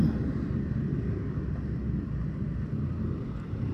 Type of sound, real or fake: real